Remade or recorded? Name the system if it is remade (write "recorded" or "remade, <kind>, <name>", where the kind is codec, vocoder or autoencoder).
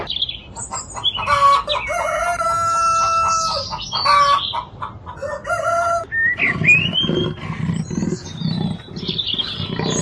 recorded